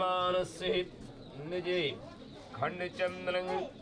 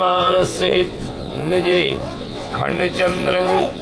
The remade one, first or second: second